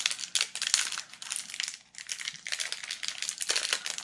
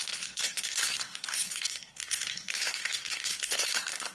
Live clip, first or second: first